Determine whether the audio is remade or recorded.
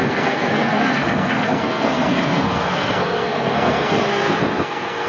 remade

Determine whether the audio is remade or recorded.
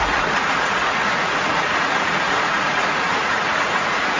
remade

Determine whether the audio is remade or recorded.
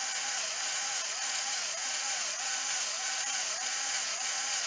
remade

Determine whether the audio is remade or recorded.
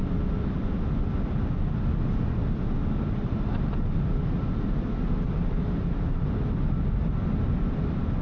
recorded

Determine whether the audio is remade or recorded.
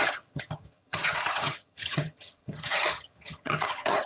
remade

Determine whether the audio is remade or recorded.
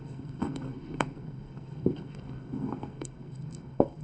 remade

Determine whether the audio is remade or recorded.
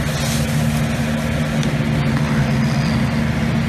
recorded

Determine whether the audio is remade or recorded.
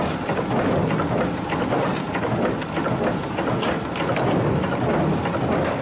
recorded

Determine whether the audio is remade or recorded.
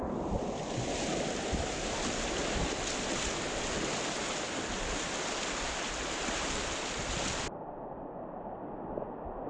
recorded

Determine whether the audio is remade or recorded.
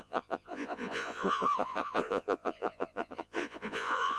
remade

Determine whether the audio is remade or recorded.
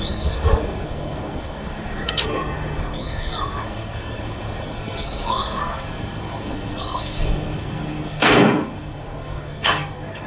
remade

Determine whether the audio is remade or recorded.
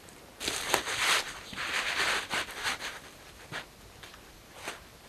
remade